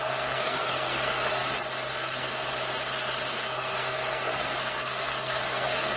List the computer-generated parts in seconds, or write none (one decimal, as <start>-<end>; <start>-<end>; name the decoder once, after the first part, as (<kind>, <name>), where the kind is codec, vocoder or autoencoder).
0.0-1.4 (codec, SNAC); 1.9-2.3; 3.3-6.0